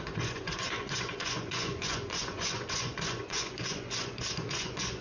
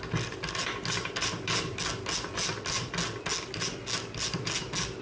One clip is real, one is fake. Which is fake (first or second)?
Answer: first